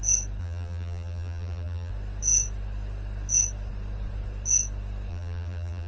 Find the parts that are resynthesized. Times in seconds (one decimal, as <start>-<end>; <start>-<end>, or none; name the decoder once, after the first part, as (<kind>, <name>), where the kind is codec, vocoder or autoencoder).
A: 0.4-1.9 (vocoder, BigVGAN v2); 5.1-5.9